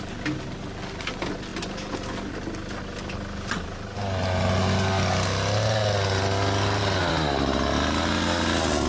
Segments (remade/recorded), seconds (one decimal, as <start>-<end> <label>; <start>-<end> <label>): 0.0-8.9 recorded